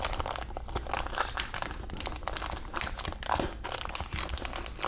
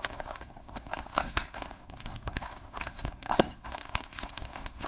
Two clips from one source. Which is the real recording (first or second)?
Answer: first